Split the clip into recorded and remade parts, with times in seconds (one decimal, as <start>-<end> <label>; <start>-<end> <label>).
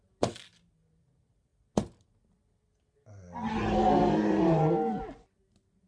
0.0-5.9 recorded